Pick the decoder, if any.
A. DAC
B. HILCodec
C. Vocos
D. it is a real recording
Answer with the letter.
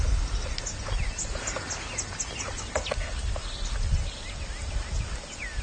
D